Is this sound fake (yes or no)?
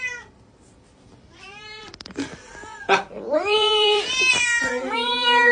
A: yes